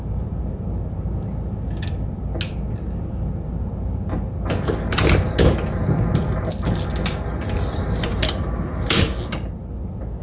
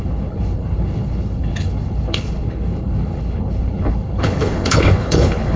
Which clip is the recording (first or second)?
first